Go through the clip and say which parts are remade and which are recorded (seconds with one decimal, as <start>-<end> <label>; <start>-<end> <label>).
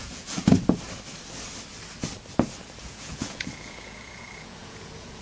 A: 0.0-0.4 remade; 0.4-2.8 recorded; 2.8-5.2 remade